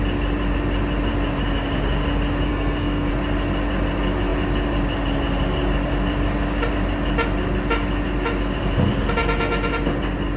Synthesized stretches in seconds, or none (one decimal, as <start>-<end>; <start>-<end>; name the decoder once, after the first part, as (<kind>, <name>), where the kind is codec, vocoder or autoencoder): 2.5-3.1 (codec, SNAC)